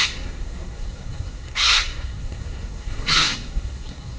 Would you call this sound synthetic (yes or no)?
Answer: yes